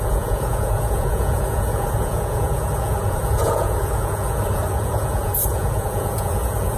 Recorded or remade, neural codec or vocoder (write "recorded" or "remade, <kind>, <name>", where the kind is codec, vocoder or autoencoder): remade, vocoder, Vocos